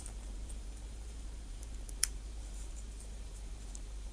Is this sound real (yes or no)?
no